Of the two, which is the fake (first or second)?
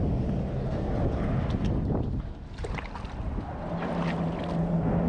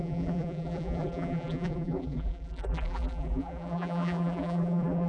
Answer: second